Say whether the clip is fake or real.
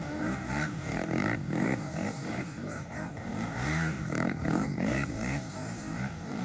fake